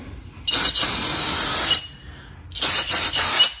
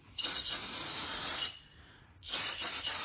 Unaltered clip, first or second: first